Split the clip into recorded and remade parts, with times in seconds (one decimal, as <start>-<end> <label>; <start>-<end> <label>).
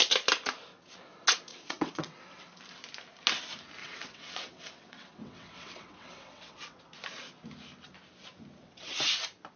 0.0-1.5 recorded; 1.5-2.4 remade; 2.4-3.8 recorded; 3.8-6.8 remade; 6.8-8.6 recorded; 8.6-9.1 remade; 9.1-9.6 recorded